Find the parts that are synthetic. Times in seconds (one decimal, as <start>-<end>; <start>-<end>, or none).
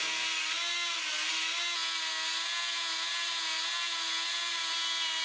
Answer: none